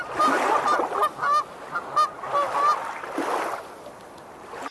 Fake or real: real